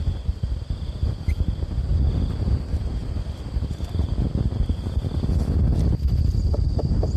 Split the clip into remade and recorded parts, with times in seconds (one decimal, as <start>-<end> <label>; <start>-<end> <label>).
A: 0.0-7.2 recorded

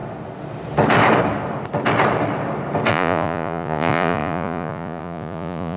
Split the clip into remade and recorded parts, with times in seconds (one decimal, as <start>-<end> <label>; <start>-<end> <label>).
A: 0.0-2.9 recorded; 2.9-5.8 remade

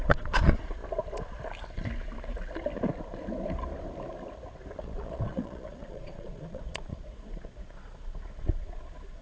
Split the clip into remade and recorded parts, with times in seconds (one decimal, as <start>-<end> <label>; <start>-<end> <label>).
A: 0.0-0.8 remade; 0.8-4.8 recorded; 4.8-9.2 remade

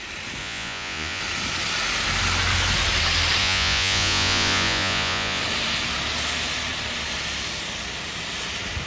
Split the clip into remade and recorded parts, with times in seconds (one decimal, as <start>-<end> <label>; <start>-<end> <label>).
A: 0.0-0.4 recorded; 0.4-1.2 remade; 1.2-3.4 recorded; 3.4-5.4 remade; 5.4-8.9 recorded

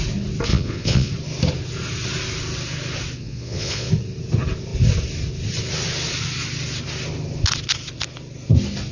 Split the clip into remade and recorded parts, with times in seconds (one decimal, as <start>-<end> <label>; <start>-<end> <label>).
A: 0.0-0.5 recorded; 0.5-1.1 remade; 1.1-3.2 recorded; 3.2-3.9 remade; 3.9-8.9 recorded

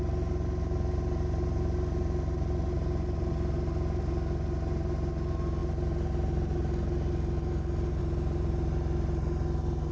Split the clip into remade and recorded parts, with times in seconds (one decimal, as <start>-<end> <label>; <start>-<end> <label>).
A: 0.0-9.9 recorded

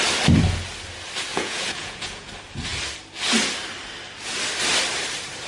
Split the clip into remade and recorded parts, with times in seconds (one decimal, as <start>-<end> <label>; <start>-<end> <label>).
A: 0.0-1.3 recorded; 1.3-2.3 remade; 2.3-5.5 recorded